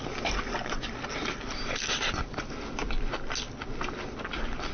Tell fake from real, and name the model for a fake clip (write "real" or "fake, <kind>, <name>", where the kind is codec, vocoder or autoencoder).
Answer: real